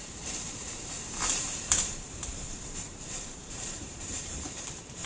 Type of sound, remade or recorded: remade